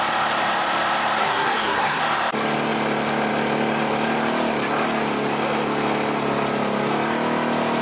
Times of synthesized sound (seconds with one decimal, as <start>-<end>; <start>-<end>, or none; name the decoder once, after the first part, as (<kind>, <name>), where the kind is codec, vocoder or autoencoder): 1.2-2.0 (codec, SNAC)

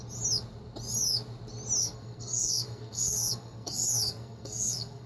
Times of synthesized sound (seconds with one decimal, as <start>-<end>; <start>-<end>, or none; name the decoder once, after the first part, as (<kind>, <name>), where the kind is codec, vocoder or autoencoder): 1.8-5.1 (codec, SNAC)

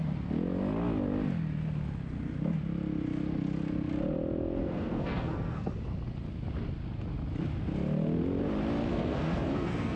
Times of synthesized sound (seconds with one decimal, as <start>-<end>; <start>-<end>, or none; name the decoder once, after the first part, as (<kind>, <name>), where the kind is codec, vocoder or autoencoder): 4.6-5.7 (codec, SNAC); 8.9-10.0

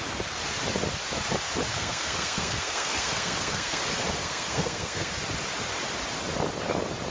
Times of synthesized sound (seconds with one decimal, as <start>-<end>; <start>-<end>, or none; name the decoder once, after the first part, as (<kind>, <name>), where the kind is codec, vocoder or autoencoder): 1.7-3.8 (codec, SNAC); 4.2-5.2

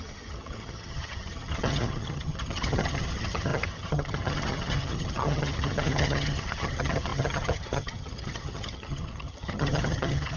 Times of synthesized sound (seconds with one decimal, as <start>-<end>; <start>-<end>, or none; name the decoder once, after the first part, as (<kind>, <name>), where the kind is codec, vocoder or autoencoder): 0.0-10.4 (vocoder, HiFi-GAN)

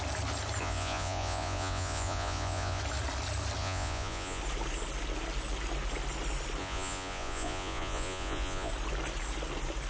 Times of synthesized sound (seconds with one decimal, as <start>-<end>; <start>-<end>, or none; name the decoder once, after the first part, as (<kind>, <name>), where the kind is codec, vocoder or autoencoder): 0.6-2.8 (vocoder, Vocos); 3.6-4.4; 6.6-8.7